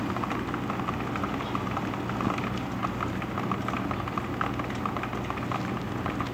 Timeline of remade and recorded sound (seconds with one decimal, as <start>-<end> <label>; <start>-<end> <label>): 0.0-2.8 recorded; 2.8-4.1 remade; 4.1-6.3 recorded